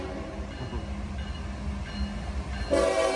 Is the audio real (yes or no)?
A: yes